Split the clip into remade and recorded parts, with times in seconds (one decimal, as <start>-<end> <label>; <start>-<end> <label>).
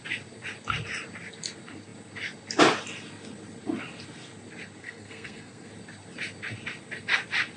0.0-4.8 recorded; 4.8-5.7 remade; 5.7-7.6 recorded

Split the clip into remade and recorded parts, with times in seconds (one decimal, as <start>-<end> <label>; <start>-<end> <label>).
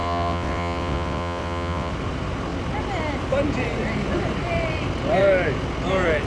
0.0-1.9 remade; 1.9-6.3 recorded